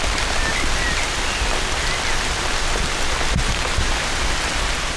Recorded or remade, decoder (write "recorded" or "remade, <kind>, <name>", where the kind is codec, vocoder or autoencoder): recorded